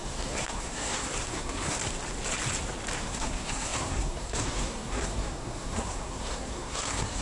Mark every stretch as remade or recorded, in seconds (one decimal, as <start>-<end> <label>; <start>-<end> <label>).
0.0-1.8 remade; 1.8-3.0 recorded; 3.0-7.2 remade